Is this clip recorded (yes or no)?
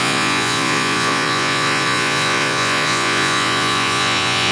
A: no